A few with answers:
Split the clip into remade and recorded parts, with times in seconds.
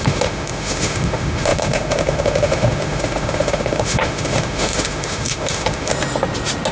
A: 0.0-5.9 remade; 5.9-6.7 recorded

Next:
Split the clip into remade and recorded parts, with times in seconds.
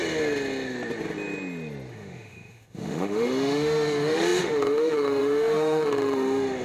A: 0.0-1.9 recorded; 1.9-6.6 remade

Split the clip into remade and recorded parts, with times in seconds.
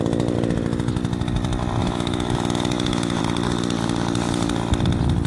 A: 0.0-1.8 recorded; 1.8-3.2 remade; 3.2-5.3 recorded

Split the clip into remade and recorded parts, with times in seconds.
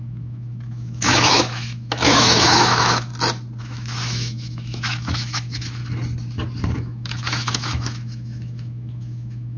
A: 0.0-3.1 remade; 3.1-3.6 recorded; 3.6-5.8 remade; 5.8-6.7 recorded; 6.7-9.6 remade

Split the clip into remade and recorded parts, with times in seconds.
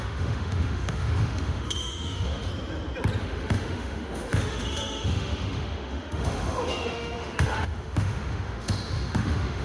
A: 0.0-2.5 remade; 2.5-3.2 recorded; 3.2-9.6 remade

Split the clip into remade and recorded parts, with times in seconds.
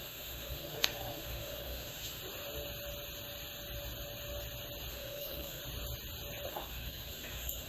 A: 0.0-2.2 remade; 2.2-4.9 recorded; 4.9-5.6 remade; 5.6-6.5 recorded; 6.5-7.7 remade